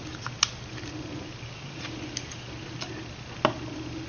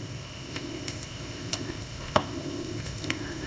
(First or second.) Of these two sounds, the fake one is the second